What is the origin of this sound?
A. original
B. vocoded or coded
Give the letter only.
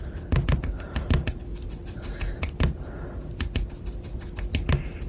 A